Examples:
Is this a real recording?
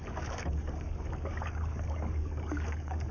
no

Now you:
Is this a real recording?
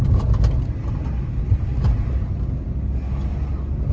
yes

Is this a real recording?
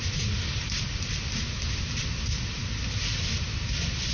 yes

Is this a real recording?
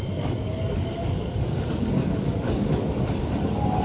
no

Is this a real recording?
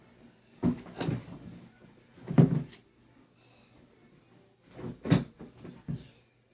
yes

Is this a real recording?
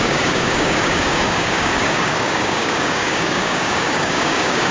no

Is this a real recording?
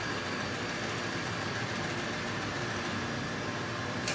yes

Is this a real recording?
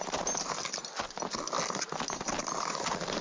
yes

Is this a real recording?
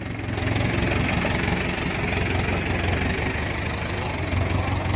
yes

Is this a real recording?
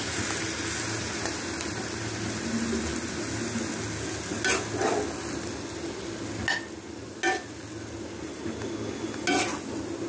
yes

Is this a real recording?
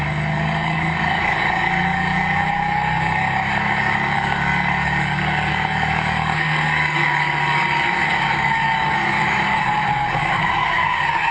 no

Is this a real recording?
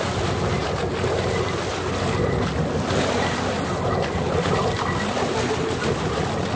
yes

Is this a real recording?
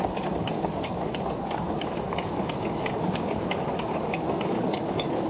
no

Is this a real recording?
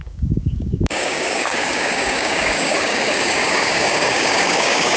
no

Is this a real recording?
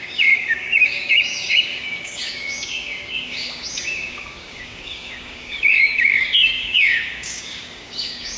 no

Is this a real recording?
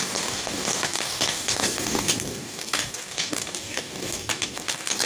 no